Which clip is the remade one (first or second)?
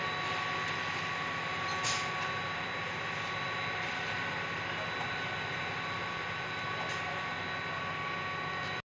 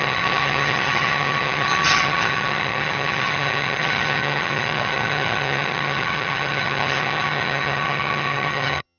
second